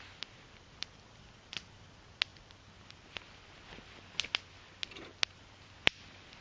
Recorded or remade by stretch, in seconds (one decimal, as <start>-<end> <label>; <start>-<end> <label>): 0.0-6.4 recorded

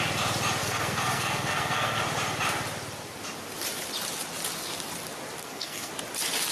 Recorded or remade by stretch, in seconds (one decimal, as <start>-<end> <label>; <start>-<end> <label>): 0.0-0.6 recorded; 0.6-2.0 remade; 2.0-5.4 recorded; 5.4-5.9 remade; 5.9-6.5 recorded

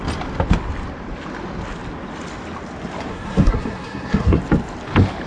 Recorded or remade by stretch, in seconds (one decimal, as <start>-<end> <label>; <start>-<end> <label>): 0.0-3.1 recorded; 3.1-4.4 remade; 4.4-5.3 recorded

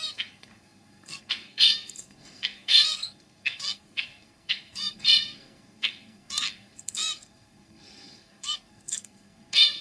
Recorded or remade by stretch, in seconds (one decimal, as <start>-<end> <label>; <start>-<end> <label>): 0.0-9.8 remade

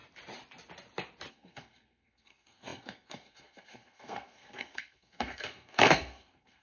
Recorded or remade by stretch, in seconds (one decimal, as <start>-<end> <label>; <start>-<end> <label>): 0.0-1.3 recorded; 1.3-6.6 remade

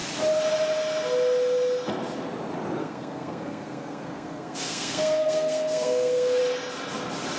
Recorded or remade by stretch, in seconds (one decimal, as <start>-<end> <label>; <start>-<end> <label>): 0.0-2.8 recorded; 2.8-6.4 remade; 6.4-7.4 recorded

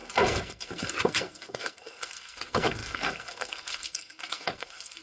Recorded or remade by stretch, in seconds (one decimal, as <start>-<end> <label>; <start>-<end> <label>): 0.0-5.0 remade

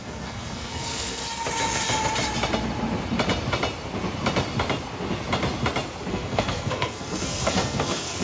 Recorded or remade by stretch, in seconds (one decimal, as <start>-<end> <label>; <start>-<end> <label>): 0.0-1.2 remade; 1.2-6.1 recorded; 6.1-8.2 remade